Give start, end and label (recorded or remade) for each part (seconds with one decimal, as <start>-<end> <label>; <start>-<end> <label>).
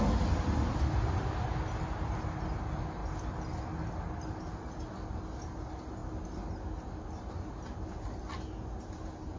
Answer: 0.0-9.4 recorded